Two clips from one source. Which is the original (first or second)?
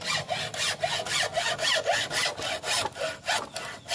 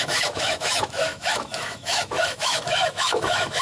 first